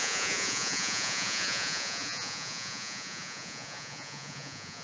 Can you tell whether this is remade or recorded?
remade